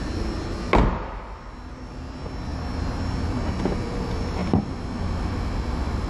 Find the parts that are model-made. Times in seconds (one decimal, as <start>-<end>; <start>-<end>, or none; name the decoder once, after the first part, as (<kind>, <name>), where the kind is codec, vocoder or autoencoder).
none